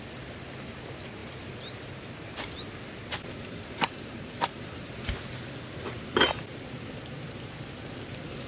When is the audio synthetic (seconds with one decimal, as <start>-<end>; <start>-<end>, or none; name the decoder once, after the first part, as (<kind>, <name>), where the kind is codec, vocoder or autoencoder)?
none

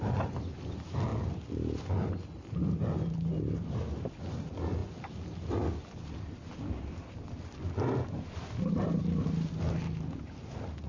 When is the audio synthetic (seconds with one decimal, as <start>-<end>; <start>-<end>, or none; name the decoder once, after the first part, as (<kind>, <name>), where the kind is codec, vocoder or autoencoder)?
none

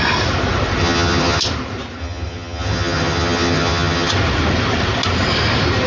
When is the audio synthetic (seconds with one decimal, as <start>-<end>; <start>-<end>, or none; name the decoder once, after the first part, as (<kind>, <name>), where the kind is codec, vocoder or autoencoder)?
0.8-1.4 (vocoder, HiFi-GAN); 2.0-4.1

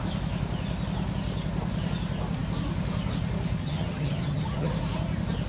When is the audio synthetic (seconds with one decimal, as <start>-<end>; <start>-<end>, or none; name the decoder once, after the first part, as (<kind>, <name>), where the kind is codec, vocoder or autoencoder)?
3.6-4.7 (vocoder, HiFi-GAN)

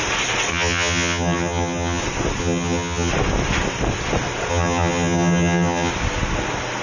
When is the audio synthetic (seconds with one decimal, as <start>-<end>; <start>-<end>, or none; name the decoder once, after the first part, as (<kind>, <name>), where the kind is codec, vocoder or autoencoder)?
0.5-2.0 (vocoder, HiFi-GAN); 2.4-3.1; 4.5-5.9

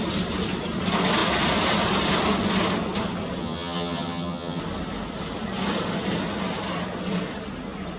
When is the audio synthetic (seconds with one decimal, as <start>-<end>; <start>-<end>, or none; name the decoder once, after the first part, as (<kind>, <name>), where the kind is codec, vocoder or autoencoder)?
3.4-4.6 (vocoder, HiFi-GAN)

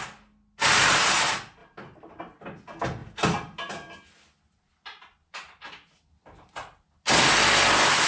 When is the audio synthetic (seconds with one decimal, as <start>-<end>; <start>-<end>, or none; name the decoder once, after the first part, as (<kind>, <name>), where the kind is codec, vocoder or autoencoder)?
none